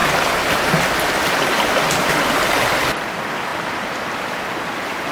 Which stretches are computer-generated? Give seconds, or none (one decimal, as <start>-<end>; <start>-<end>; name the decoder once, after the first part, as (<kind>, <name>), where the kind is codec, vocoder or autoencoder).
3.5-4.1 (vocoder, BigVGAN v2)

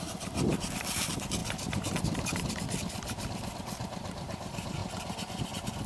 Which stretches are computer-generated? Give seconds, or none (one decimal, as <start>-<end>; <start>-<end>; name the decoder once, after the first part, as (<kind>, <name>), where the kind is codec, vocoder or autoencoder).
0.0-4.8 (vocoder, BigVGAN v2); 5.4-5.9

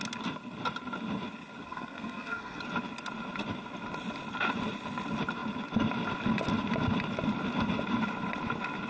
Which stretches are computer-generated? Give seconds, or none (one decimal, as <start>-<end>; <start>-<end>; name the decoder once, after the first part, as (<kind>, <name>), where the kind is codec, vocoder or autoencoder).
1.6-2.6 (codec, SNAC)

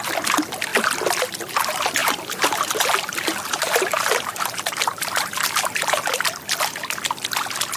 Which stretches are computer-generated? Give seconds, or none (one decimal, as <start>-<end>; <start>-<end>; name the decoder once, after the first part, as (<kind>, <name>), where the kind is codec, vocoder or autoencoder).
2.0-6.2 (vocoder, BigVGAN v2)

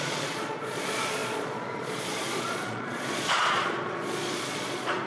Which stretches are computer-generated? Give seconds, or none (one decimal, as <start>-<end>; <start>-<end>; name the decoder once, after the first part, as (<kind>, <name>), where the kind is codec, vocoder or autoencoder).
0.0-5.1 (vocoder, Vocos)

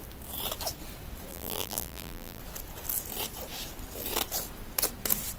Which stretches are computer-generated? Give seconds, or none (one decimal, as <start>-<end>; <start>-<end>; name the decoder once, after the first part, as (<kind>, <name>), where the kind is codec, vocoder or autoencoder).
1.3-2.4 (vocoder, BigVGAN v2)